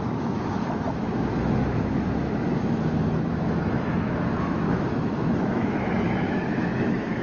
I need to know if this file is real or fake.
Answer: fake